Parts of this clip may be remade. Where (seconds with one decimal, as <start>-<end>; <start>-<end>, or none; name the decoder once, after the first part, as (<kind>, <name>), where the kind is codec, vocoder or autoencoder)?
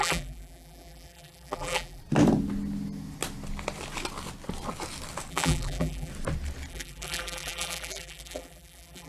0.0-2.0 (vocoder, BigVGAN v2); 5.3-6.1; 6.7-9.1